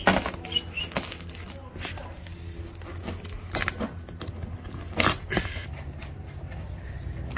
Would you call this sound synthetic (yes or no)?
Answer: no